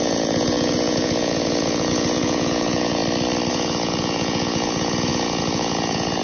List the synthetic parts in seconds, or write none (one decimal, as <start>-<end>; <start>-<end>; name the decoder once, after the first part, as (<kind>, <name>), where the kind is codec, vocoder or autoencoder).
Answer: 0.0-3.0 (vocoder, Vocos); 3.5-6.2